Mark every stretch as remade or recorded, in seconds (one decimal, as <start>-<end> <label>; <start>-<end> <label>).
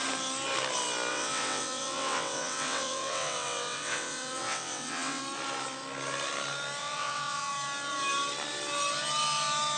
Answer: 0.0-1.1 recorded; 1.1-5.2 remade; 5.2-6.8 recorded; 6.8-7.5 remade; 7.5-9.8 recorded